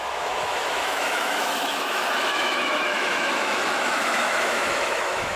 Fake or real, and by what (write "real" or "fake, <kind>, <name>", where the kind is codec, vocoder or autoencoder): fake, autoencoder, DAC-VAE